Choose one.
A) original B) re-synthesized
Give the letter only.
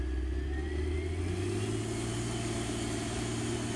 A